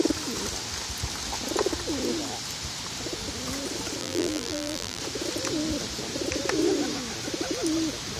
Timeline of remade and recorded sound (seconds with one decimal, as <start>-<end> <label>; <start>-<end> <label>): 0.0-4.0 recorded; 4.0-5.0 remade; 5.0-8.2 recorded